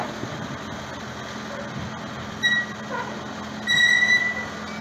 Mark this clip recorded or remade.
recorded